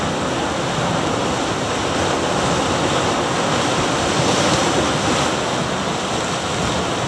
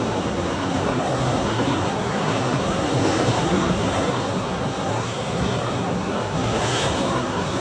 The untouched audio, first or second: first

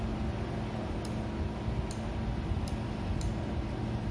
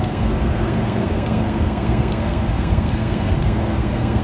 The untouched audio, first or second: first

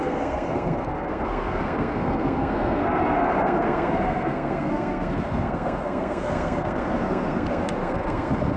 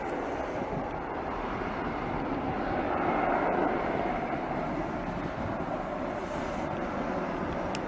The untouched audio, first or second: second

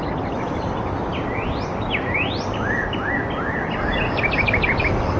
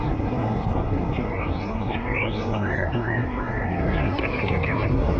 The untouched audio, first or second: first